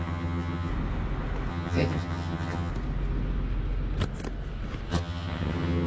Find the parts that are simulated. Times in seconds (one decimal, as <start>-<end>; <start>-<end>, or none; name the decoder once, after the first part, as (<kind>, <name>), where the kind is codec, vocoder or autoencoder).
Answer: 0.0-0.7 (vocoder, HiFi-GAN); 1.5-2.7; 4.9-5.9